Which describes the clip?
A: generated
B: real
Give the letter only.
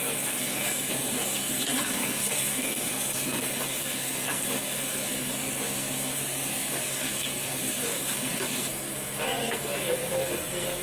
A